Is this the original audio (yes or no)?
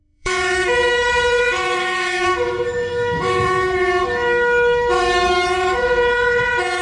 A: no